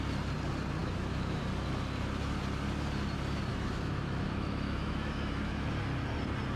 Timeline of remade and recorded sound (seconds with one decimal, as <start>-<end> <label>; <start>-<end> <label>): 0.0-0.8 recorded; 0.8-1.4 remade; 1.4-3.5 recorded; 3.5-5.8 remade; 5.8-6.6 recorded